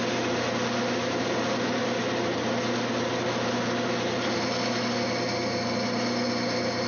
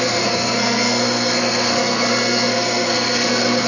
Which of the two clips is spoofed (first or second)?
second